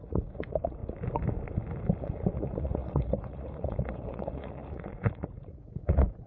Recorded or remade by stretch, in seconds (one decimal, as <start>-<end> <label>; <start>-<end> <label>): 0.0-0.8 remade; 0.8-2.0 recorded; 2.0-6.3 remade